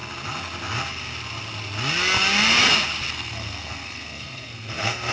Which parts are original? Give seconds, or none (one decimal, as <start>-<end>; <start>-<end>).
0.0-3.1